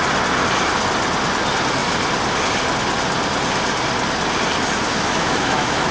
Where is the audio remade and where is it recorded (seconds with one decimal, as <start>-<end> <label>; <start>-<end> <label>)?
0.0-4.9 recorded; 4.9-5.9 remade